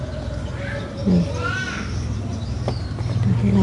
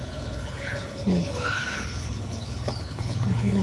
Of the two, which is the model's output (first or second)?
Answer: second